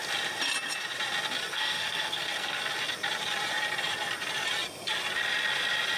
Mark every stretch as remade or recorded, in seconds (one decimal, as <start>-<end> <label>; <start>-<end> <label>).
0.0-1.5 recorded; 1.5-2.6 remade; 2.6-6.0 recorded